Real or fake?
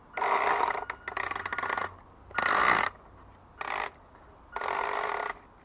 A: real